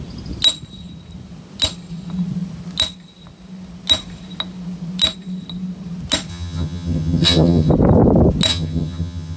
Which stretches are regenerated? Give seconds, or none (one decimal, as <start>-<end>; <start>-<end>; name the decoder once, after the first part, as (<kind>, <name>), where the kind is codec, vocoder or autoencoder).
6.3-7.7 (vocoder, HiFi-GAN); 8.5-9.4